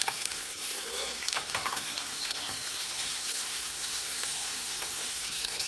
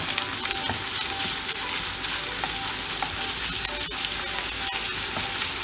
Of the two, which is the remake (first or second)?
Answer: first